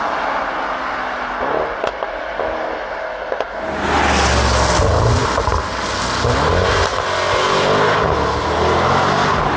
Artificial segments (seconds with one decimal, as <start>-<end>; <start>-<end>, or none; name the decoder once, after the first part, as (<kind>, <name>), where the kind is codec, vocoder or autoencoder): none